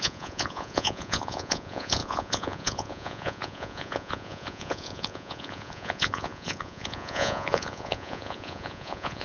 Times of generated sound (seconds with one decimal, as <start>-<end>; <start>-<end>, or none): 0.0-9.2